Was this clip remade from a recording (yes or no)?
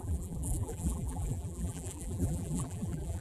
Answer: yes